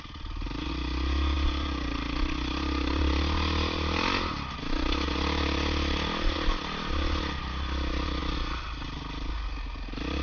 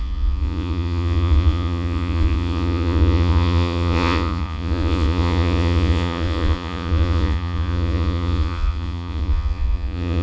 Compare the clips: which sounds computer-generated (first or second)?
second